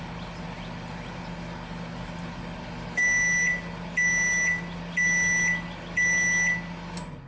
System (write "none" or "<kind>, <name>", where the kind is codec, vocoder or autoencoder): none